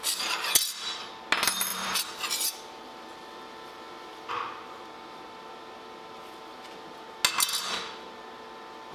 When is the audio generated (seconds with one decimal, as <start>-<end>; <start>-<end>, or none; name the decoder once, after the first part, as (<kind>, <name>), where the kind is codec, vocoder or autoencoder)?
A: 1.7-4.3 (vocoder, BigVGAN v2)

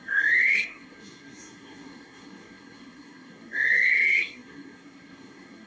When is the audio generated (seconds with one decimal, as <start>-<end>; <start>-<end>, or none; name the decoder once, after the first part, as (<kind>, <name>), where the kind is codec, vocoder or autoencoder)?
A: 0.0-5.7 (codec, SNAC)

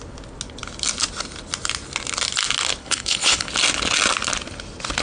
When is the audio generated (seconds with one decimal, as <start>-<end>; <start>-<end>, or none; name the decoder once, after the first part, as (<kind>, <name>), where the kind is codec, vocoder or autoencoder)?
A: 2.8-3.5 (codec, HILCodec)

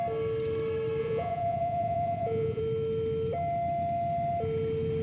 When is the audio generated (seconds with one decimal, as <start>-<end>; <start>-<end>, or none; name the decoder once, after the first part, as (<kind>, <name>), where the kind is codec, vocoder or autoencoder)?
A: 1.0-2.6 (vocoder, Vocos)

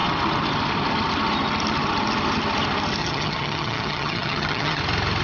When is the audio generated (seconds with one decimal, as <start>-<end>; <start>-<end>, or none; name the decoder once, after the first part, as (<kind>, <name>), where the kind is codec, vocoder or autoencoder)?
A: 3.0-4.8 (vocoder, HiFi-GAN)

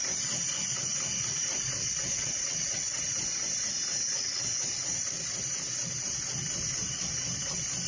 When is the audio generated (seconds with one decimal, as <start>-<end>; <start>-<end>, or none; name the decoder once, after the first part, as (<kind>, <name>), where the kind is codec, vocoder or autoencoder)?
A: 1.8-3.0 (vocoder, WaveNeXt); 3.9-4.6

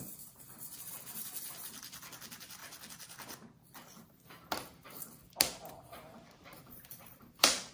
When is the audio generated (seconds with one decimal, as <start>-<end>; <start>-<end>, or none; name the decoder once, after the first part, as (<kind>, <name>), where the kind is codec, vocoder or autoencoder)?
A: 6.6-7.7 (vocoder, BigVGAN v2)